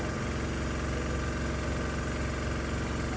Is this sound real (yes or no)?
yes